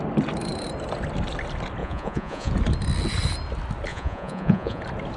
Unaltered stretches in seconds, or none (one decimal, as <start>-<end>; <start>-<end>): 0.0-1.8; 2.5-3.9; 4.8-5.2

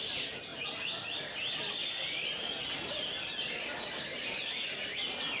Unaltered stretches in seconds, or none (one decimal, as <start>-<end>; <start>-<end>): 0.0-5.4

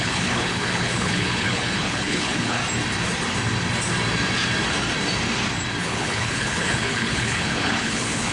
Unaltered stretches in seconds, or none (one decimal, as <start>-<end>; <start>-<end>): 2.6-5.8

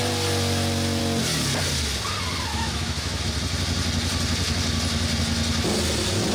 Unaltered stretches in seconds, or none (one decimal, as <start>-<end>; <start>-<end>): 0.0-2.5; 3.2-6.3

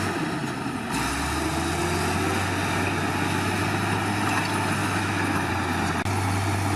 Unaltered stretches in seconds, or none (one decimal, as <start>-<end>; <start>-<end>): 0.0-4.8; 5.5-6.8

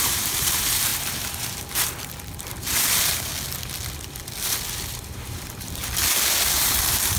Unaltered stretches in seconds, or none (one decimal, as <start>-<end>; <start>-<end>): 3.3-4.9; 5.8-6.4

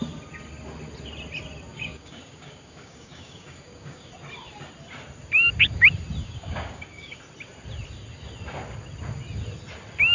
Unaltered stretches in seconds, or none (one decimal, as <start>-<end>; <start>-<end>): 0.0-1.7; 4.1-6.2; 7.2-10.1

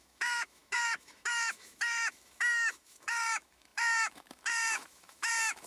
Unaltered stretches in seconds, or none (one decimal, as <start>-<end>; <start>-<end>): none